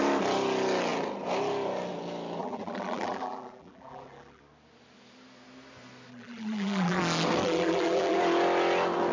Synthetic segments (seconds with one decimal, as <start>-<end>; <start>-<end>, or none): 2.4-4.4; 6.1-7.0; 7.4-8.2